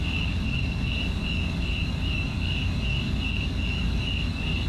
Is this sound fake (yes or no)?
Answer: yes